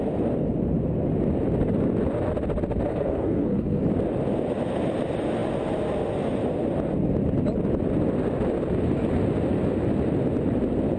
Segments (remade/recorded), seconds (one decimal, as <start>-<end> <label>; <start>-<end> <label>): 0.0-2.9 recorded; 2.9-3.8 remade; 3.8-11.0 recorded